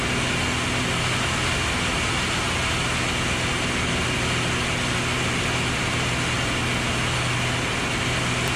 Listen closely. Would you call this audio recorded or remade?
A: recorded